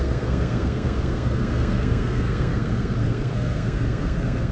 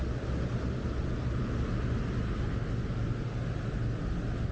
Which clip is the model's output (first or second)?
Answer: first